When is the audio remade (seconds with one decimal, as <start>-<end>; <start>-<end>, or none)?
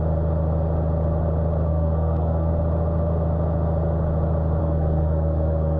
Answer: 1.7-2.5; 4.6-5.8